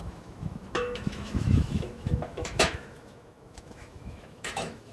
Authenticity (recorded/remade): remade